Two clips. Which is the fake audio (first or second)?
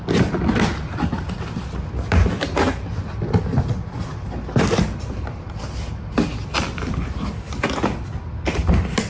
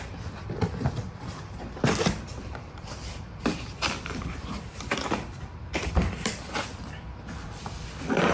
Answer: second